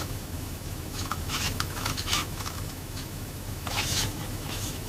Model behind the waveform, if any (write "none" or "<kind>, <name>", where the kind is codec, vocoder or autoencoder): autoencoder, DAC-VAE